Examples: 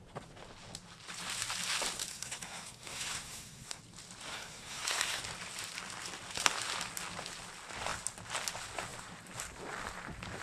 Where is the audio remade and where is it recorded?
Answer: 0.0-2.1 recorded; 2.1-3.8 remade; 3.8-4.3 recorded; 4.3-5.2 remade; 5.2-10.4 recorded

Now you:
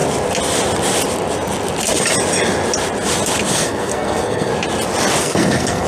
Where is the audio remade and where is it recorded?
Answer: 0.0-3.5 recorded; 3.5-4.5 remade; 4.5-5.2 recorded; 5.2-5.9 remade